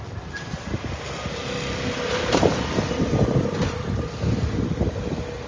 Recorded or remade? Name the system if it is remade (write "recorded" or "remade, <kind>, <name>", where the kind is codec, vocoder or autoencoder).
recorded